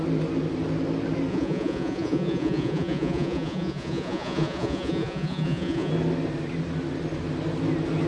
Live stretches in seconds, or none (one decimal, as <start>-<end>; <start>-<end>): 0.0-1.3; 5.9-8.1